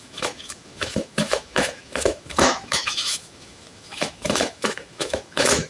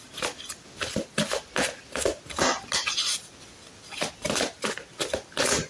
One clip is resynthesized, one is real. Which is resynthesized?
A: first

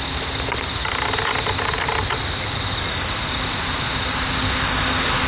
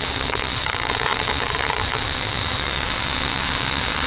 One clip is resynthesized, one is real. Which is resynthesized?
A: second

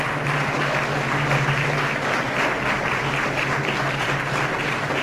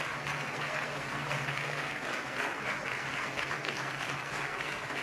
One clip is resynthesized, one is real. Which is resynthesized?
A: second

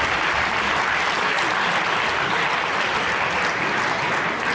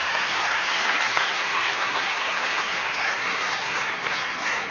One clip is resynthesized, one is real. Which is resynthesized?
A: second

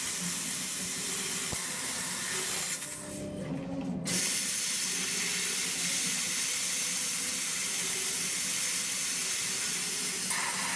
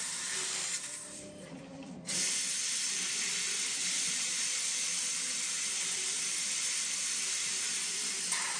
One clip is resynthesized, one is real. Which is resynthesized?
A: second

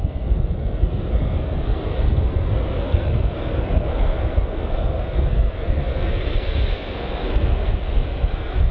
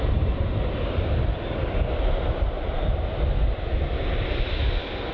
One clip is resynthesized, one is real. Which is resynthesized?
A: first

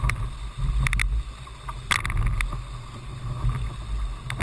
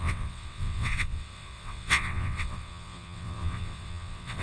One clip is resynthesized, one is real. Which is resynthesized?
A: second